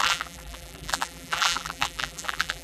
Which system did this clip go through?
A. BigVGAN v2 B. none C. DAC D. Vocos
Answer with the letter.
A